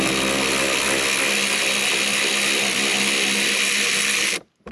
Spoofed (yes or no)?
no